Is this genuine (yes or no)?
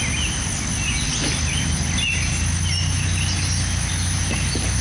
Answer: yes